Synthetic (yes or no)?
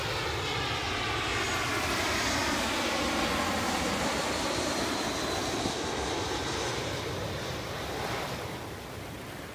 no